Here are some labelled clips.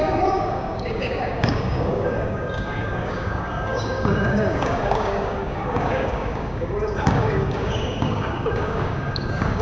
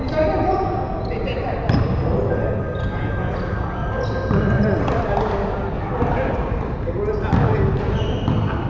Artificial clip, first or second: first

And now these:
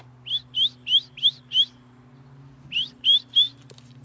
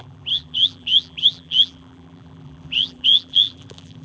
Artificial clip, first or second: second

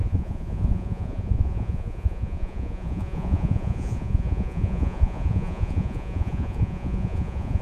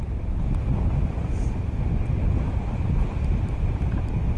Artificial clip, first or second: first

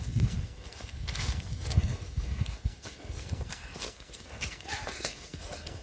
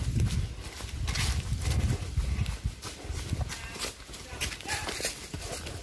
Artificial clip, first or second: first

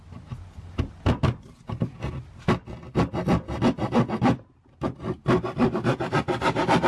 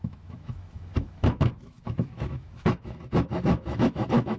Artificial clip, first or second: second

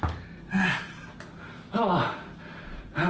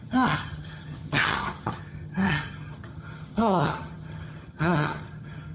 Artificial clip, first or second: second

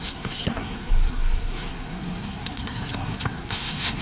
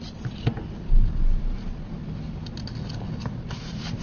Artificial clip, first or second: first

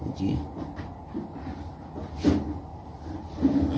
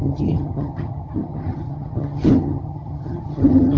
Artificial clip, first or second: second